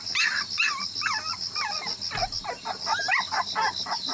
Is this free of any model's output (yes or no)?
yes